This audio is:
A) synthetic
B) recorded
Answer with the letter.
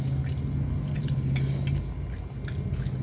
B